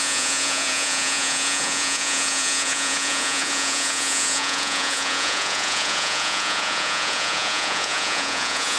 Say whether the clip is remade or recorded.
remade